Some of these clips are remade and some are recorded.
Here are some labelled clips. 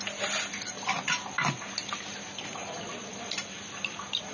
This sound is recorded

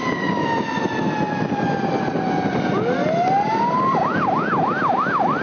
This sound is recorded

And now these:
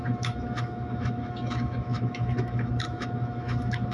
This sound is remade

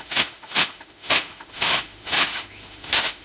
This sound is remade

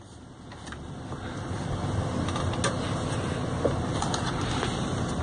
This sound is recorded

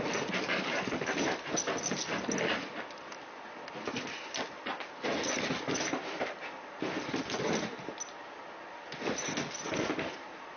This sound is recorded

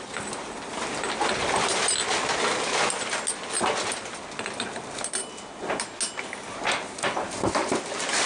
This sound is recorded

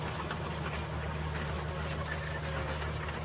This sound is recorded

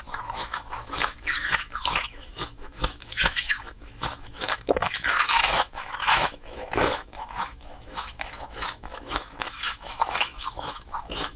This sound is remade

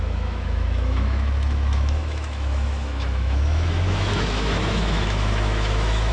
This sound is remade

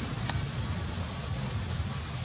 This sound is recorded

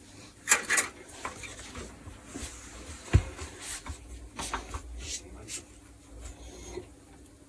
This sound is recorded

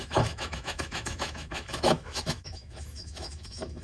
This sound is remade